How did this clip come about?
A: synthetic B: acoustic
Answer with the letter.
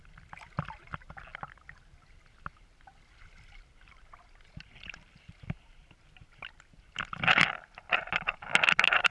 B